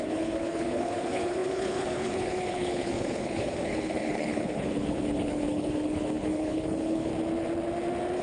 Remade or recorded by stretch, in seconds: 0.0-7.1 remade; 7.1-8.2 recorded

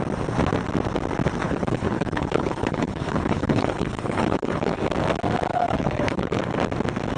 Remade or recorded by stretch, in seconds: 0.0-1.4 recorded; 1.4-4.8 remade; 4.8-5.5 recorded; 5.5-6.4 remade; 6.4-7.2 recorded

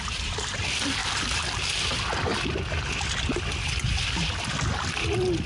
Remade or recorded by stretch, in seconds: 0.0-5.5 recorded